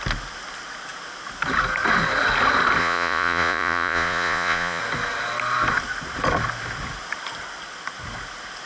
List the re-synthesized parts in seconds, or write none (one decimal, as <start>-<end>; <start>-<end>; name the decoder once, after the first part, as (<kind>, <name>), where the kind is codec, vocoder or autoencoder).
2.8-4.8 (vocoder, Vocos)